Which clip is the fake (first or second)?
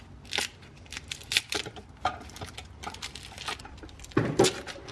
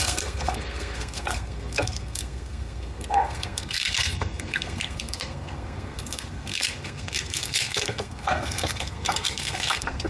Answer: second